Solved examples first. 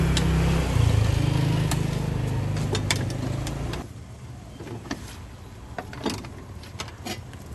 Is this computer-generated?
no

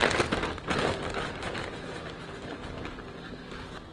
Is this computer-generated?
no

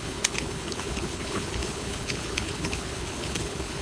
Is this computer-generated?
yes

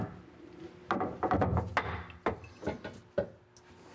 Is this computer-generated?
no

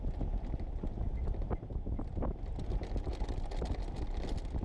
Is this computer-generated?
no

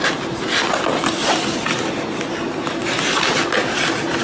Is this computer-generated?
no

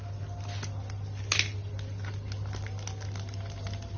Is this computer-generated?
no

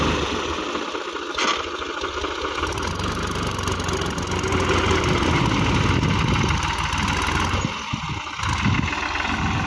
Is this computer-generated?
no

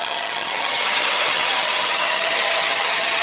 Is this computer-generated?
yes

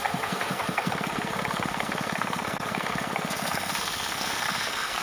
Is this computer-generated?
yes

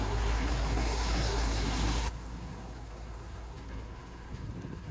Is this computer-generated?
yes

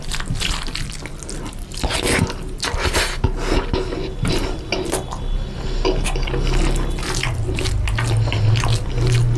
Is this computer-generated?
no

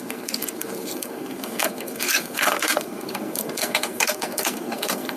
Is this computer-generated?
yes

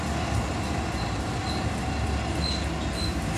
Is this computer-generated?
no